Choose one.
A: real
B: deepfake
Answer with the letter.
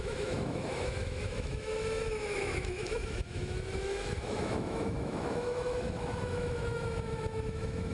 B